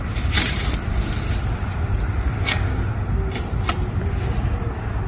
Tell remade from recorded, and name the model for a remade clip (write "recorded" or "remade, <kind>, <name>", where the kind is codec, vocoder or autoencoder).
recorded